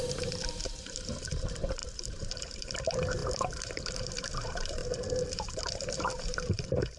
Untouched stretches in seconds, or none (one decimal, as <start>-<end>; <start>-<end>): 4.8-5.3